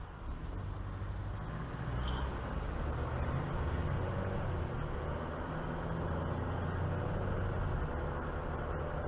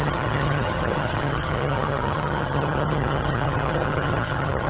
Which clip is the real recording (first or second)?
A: first